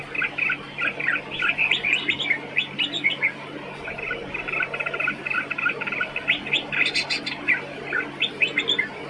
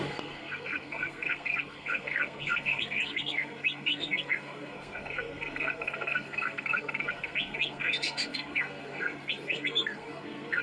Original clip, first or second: first